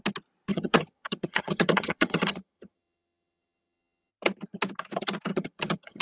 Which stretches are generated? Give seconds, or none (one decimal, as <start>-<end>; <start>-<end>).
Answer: 0.5-4.1; 5.3-6.0